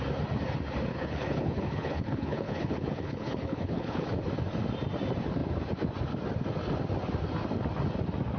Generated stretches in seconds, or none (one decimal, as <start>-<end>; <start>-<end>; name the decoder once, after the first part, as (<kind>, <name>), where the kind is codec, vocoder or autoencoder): 0.9-4.1 (codec, HILCodec)